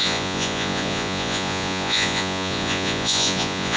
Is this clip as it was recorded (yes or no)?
no